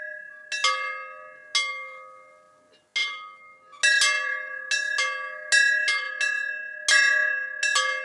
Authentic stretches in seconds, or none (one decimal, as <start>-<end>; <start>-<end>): 0.0-8.0